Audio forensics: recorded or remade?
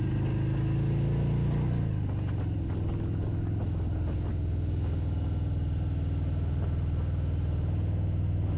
recorded